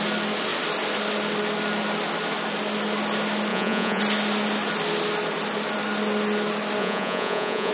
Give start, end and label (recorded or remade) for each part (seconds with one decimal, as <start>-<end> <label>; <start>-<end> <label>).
0.0-3.5 recorded; 3.5-4.0 remade; 4.0-6.8 recorded; 6.8-7.7 remade